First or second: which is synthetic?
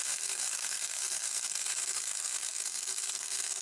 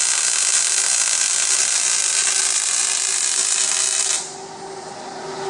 first